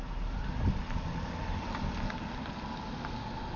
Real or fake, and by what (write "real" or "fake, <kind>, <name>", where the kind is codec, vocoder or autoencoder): real